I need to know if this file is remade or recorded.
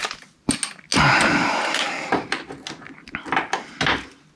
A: recorded